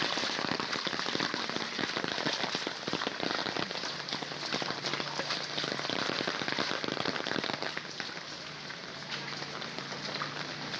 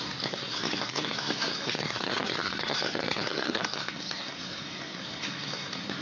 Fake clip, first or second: second